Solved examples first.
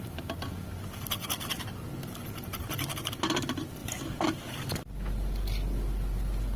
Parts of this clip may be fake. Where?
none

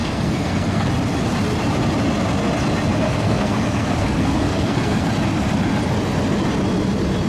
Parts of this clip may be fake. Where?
0.0-0.9; 2.9-5.1